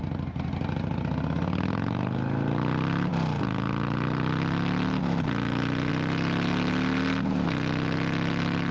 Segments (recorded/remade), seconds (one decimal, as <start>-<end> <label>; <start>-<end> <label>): 0.0-8.7 recorded